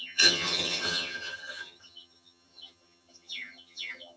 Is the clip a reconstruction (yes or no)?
yes